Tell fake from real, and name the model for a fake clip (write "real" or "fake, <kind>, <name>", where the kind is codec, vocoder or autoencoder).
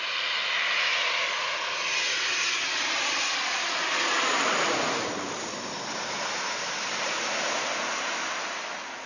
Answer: real